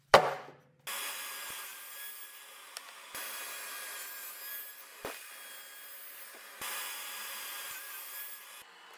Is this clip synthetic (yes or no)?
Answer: no